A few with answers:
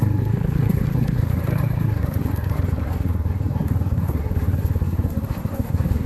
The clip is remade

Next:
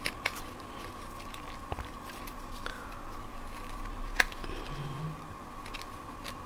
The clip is recorded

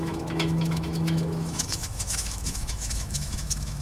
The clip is remade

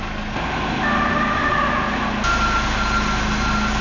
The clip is recorded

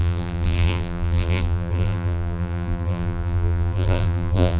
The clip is remade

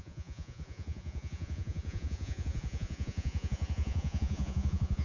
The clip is remade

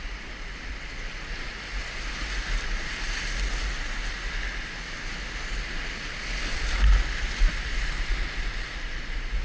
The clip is recorded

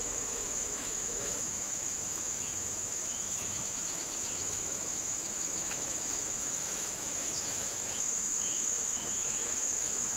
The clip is remade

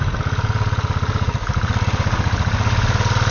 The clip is recorded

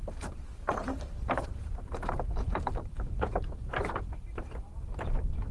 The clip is remade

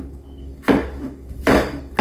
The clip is remade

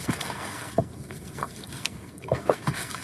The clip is remade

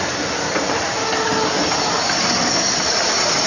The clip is recorded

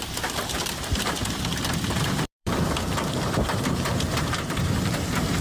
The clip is remade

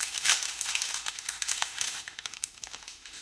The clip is remade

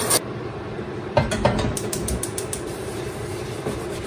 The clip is remade